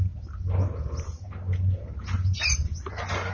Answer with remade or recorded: recorded